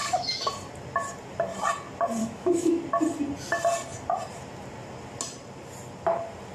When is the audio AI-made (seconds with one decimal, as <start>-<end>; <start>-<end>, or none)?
0.0-0.5; 2.2-2.8